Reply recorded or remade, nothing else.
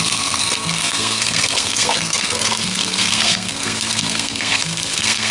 remade